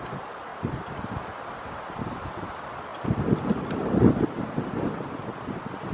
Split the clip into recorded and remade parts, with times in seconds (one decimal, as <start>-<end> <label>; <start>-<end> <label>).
0.0-2.9 recorded; 2.9-4.1 remade; 4.1-5.9 recorded